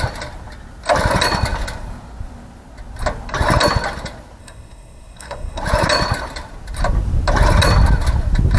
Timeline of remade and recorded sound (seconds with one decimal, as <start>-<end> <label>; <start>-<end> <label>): 0.0-4.4 recorded; 4.4-5.6 remade; 5.6-8.6 recorded